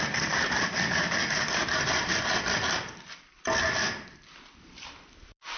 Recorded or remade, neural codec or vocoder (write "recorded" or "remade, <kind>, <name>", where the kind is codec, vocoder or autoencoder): remade, vocoder, BigVGAN v2